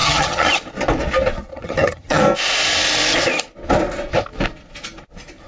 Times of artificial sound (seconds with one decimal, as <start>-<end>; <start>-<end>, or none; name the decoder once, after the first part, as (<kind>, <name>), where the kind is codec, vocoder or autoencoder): 0.0-0.5 (vocoder, HiFi-GAN); 1.5-2.2